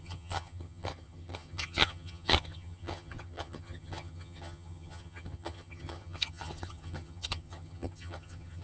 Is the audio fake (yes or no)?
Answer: yes